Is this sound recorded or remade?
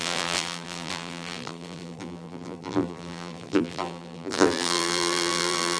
remade